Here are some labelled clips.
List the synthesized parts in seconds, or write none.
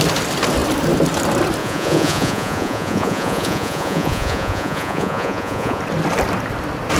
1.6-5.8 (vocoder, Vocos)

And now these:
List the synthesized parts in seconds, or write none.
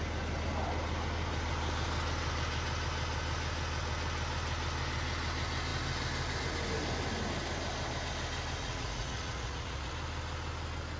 8.6-9.9 (vocoder, Vocos)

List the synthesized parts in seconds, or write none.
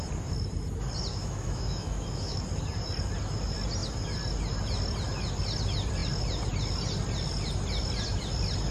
1.1-2.4 (autoencoder, DAC-VAE)